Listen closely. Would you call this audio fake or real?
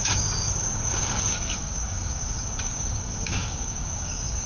fake